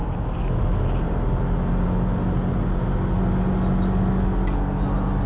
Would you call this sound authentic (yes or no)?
yes